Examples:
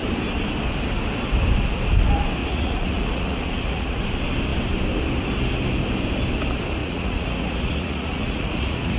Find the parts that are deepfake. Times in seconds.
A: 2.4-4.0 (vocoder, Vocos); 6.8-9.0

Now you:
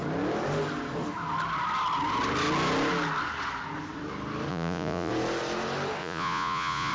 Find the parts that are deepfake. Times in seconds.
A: 4.5-5.1 (vocoder, Vocos); 6.0-6.9